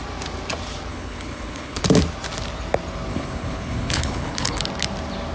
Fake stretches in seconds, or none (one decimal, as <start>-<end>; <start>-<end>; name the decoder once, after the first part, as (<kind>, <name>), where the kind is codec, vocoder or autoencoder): 0.9-1.8 (codec, HILCodec); 3.1-4.6